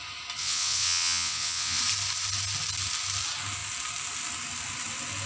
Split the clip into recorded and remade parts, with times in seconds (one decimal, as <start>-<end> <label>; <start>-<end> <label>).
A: 0.0-0.4 recorded; 0.4-1.8 remade; 1.8-5.3 recorded